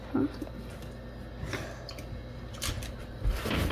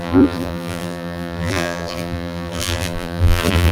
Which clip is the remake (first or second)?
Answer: second